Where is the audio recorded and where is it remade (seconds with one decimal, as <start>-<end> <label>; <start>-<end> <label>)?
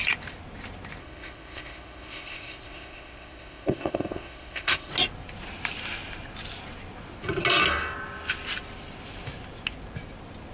0.0-1.0 recorded; 1.0-4.9 remade; 4.9-10.5 recorded